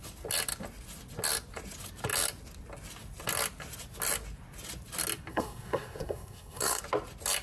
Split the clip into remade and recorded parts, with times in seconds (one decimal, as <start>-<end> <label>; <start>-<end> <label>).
0.0-5.3 recorded; 5.3-6.8 remade; 6.8-7.4 recorded